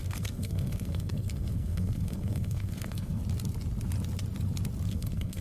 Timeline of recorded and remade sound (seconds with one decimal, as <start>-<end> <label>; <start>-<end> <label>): 0.0-3.2 remade; 3.2-4.9 recorded; 4.9-5.4 remade